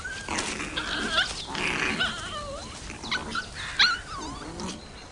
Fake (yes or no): no